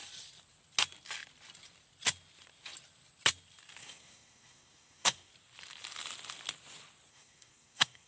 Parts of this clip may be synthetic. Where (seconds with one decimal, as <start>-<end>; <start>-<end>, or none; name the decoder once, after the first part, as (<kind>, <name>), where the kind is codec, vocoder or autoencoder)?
3.8-5.3 (codec, SNAC); 7.1-8.1